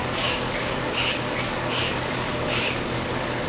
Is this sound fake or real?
fake